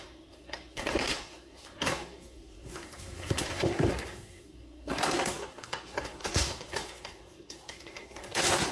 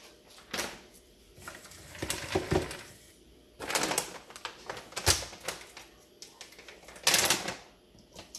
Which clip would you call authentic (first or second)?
second